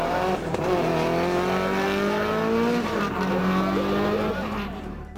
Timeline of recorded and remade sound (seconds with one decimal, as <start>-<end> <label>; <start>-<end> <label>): 0.0-0.9 remade; 0.9-3.0 recorded; 3.0-3.4 remade; 3.4-4.3 recorded; 4.3-5.2 remade